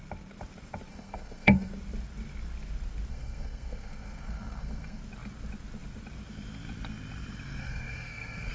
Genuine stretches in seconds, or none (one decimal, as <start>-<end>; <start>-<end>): 0.0-0.9; 1.7-3.1; 5.0-7.6